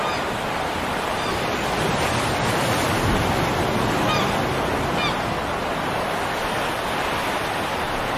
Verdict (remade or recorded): recorded